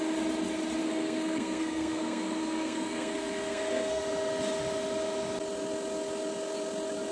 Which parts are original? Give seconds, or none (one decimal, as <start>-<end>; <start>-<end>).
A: 0.0-0.8; 4.0-7.1